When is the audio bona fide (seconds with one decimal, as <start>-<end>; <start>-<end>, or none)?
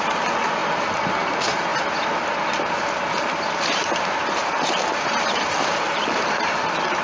0.0-7.0